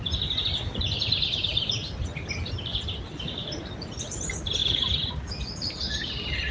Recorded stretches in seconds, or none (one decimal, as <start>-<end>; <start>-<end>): 0.0-4.6; 5.3-6.5

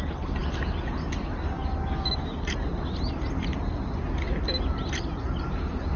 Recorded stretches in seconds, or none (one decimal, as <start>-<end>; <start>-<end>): 0.0-6.0

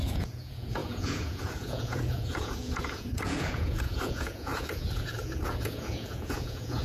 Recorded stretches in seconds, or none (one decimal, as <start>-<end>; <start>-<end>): none

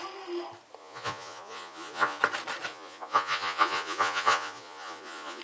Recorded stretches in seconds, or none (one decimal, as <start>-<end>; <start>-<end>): 0.0-0.8; 2.2-2.7

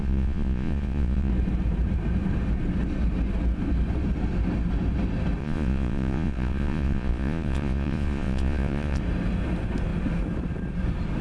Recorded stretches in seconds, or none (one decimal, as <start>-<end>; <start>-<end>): 1.3-5.4; 9.0-11.2